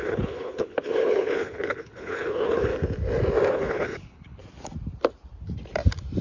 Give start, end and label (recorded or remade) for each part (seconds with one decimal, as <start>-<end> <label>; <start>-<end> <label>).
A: 0.0-2.7 remade; 2.7-3.5 recorded; 3.5-4.4 remade; 4.4-6.2 recorded